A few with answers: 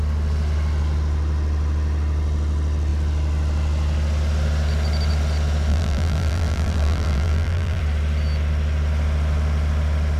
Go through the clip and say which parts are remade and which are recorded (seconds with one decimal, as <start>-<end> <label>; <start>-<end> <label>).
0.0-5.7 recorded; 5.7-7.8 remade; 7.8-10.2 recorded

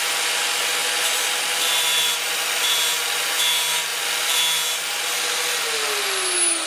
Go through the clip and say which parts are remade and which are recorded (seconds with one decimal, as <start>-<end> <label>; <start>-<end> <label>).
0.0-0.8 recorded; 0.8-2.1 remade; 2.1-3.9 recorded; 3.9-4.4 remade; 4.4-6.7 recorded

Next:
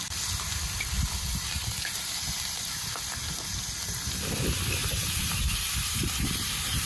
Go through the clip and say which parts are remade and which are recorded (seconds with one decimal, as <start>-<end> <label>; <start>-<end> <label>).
0.0-1.6 recorded; 1.6-2.9 remade; 2.9-4.8 recorded; 4.8-6.9 remade

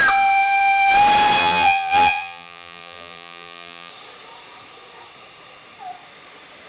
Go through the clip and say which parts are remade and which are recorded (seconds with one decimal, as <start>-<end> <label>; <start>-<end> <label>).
0.0-1.4 recorded; 1.4-3.9 remade; 3.9-6.7 recorded

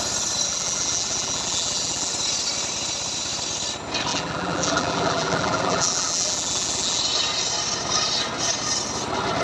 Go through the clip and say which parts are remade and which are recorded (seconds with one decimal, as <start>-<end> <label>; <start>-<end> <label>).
0.0-0.5 recorded; 0.5-2.1 remade; 2.1-4.1 recorded; 4.1-7.0 remade; 7.0-9.4 recorded

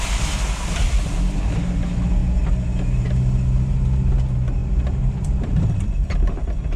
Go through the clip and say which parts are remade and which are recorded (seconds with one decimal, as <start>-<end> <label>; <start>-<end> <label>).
0.0-4.6 recorded; 4.6-6.1 remade; 6.1-6.8 recorded

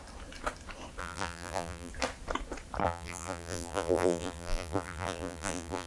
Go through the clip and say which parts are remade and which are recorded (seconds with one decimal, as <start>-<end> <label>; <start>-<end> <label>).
0.0-1.0 recorded; 1.0-1.9 remade; 1.9-2.8 recorded; 2.8-5.9 remade